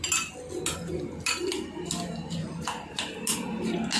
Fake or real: real